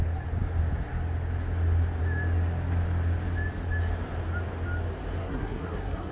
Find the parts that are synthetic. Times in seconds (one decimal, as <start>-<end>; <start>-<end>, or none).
5.2-6.1